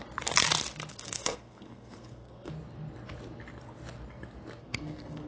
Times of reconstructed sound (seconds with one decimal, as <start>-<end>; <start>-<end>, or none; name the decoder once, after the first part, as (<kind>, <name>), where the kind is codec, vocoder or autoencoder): 0.9-2.5 (codec, SNAC); 4.6-5.3